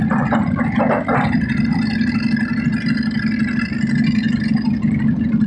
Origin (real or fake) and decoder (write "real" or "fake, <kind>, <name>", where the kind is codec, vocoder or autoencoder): real